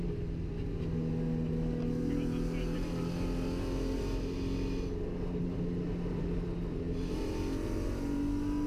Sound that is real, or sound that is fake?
real